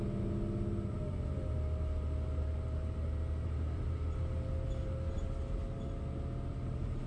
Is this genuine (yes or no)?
yes